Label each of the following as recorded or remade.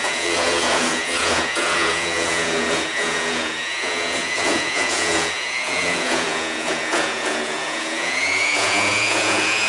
remade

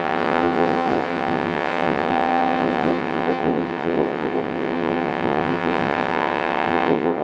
remade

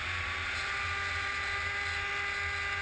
recorded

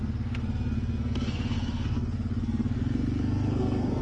remade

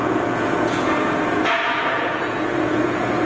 remade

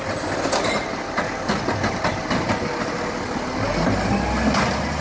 recorded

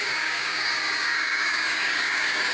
remade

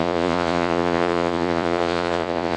remade